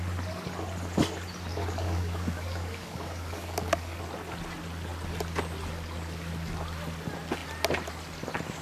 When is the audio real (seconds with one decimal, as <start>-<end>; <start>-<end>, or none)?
0.0-1.5; 4.0-8.6